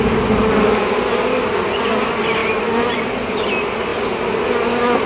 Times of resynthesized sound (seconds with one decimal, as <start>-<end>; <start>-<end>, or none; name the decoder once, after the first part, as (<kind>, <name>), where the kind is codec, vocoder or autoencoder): 2.4-3.0 (vocoder, BigVGAN v2)